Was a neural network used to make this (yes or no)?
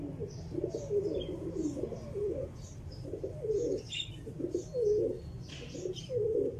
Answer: no